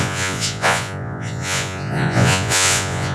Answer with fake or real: fake